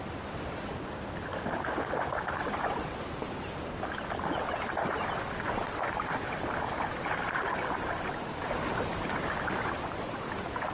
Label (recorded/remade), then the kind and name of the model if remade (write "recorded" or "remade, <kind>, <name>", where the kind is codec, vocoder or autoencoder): recorded